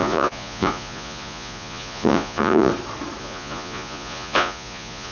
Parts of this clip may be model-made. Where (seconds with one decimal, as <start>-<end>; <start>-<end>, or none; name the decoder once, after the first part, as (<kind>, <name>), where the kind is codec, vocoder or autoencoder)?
0.0-2.7 (vocoder, Vocos); 3.2-5.1